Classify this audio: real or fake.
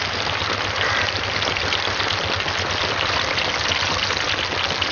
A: real